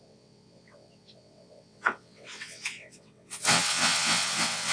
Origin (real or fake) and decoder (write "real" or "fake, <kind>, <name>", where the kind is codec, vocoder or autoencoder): fake, vocoder, WaveNeXt